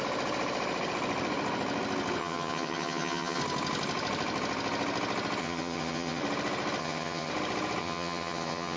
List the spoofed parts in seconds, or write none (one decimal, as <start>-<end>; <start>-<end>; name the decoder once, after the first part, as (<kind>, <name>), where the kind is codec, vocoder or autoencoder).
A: 2.2-3.4 (vocoder, HiFi-GAN); 5.4-6.2; 6.8-7.3; 7.8-8.8